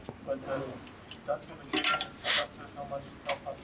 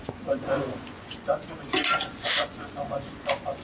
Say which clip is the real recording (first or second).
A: first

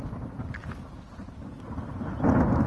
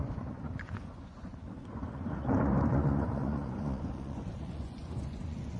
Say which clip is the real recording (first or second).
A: first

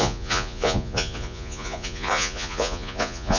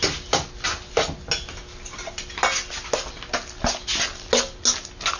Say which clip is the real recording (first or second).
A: second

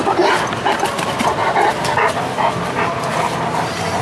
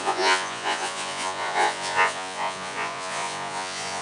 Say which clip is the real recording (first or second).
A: first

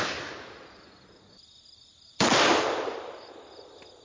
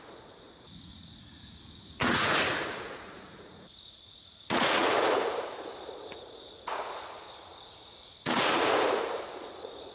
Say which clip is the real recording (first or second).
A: first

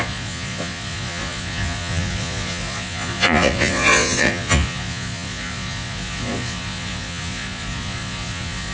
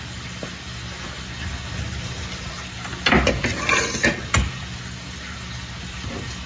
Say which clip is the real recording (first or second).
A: second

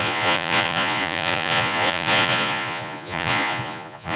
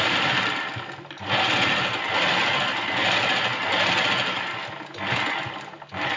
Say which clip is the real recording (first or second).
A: second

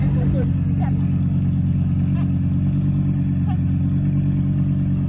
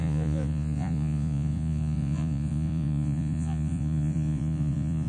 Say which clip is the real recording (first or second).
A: first